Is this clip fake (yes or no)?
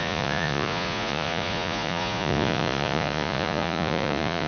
yes